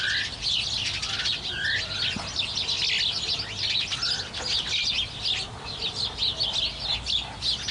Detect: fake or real real